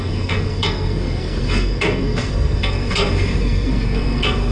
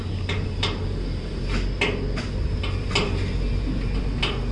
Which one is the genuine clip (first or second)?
second